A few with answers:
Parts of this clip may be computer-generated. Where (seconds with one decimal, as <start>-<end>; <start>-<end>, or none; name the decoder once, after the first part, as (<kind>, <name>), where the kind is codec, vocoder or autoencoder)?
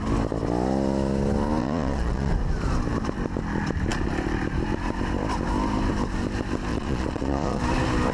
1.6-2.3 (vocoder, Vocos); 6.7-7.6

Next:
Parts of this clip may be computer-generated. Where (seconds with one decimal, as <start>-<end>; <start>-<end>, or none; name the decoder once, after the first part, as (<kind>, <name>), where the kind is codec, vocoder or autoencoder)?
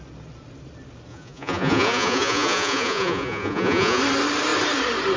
1.1-4.0 (vocoder, Vocos)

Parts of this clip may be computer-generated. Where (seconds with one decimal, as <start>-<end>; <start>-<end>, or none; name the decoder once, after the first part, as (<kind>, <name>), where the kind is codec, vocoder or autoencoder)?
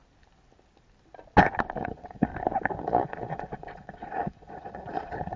1.8-2.3 (vocoder, Vocos); 2.8-5.4